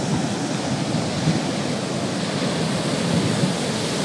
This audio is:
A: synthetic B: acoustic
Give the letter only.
B